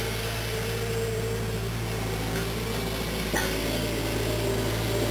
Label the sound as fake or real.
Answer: real